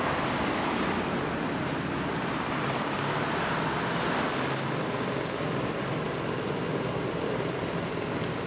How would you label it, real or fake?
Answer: real